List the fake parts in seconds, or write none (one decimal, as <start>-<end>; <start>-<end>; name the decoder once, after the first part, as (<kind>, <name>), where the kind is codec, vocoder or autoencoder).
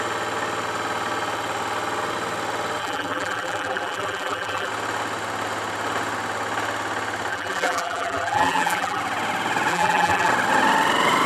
2.8-4.7 (vocoder, BigVGAN v2); 7.3-9.0; 9.7-10.3